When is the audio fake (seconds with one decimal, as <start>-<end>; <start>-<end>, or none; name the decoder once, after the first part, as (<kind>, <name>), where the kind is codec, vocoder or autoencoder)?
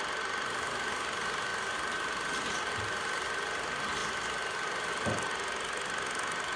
none